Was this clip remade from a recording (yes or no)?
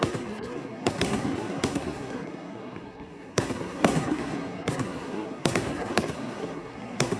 yes